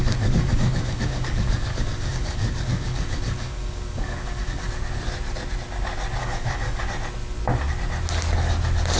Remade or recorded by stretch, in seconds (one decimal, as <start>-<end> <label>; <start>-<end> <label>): 0.0-4.7 remade; 4.7-6.2 recorded; 6.2-6.8 remade; 6.8-9.0 recorded